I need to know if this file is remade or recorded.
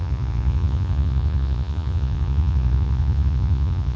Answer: remade